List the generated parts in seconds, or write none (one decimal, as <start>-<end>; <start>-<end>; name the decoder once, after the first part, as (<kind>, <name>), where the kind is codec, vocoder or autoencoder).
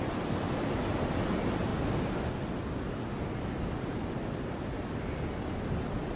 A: none